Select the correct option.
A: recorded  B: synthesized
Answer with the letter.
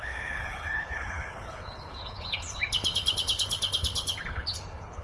B